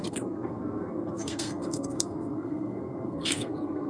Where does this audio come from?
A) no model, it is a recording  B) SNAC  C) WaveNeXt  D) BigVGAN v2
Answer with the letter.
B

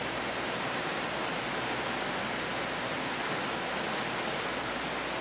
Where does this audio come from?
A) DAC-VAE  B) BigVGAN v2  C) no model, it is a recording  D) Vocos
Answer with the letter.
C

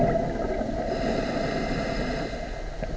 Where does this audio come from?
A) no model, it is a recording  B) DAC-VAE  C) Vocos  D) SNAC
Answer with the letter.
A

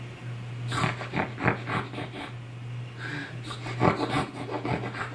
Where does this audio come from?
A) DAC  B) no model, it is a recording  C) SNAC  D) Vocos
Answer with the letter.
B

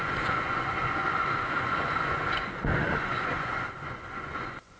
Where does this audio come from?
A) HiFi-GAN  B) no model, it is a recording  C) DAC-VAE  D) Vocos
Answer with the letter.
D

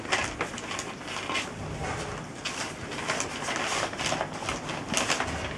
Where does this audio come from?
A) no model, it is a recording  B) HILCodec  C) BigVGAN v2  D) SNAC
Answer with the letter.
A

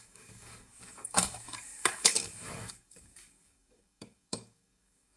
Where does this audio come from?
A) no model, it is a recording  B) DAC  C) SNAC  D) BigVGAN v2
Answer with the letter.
B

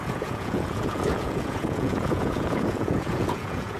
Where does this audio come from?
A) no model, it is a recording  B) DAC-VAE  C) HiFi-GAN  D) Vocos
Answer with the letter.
D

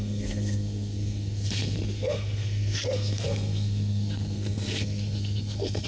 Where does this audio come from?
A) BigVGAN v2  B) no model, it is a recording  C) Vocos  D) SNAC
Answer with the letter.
D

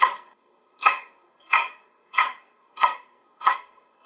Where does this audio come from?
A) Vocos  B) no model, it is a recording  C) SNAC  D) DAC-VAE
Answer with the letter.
C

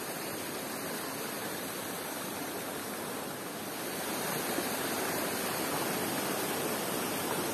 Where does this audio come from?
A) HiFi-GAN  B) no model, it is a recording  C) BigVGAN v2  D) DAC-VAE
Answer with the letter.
B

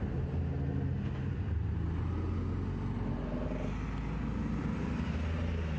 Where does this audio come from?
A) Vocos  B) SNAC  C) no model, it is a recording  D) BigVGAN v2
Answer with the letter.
C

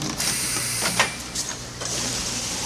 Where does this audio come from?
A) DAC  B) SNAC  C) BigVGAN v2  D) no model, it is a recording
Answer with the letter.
C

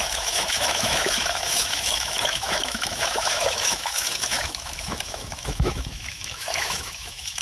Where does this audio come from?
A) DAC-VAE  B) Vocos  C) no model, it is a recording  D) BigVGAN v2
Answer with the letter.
A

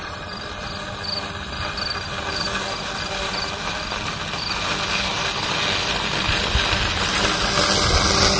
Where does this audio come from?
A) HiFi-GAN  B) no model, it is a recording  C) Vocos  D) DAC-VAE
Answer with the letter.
B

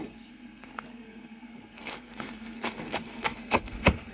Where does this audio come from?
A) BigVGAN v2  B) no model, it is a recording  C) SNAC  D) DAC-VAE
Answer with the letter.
C